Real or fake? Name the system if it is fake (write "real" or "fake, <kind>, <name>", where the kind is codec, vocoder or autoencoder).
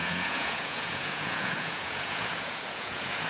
fake, vocoder, Vocos